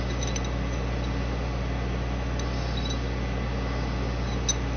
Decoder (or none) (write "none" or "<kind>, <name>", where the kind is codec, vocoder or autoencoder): none